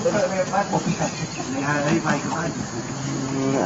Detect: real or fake real